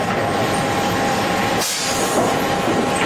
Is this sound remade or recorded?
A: remade